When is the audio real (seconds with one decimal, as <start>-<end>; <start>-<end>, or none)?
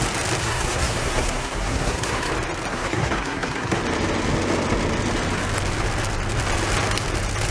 0.0-0.4; 2.3-2.7; 3.8-7.5